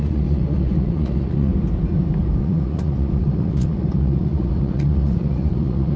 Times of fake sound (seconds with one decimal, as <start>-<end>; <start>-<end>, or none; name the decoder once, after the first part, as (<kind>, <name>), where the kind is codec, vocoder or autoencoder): 0.0-1.5 (vocoder, Vocos); 2.4-6.0